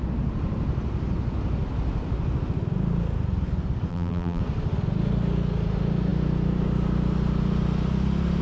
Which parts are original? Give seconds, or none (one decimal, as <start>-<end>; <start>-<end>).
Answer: 0.0-3.9; 4.4-8.4